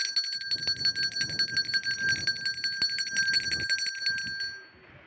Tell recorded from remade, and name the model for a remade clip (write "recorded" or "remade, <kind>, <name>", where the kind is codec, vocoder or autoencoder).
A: recorded